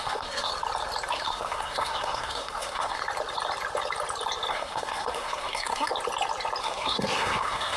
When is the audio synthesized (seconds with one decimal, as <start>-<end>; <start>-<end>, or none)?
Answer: 0.0-0.5; 1.1-3.0; 4.5-5.9; 6.6-7.8